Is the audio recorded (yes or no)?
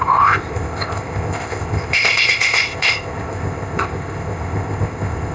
no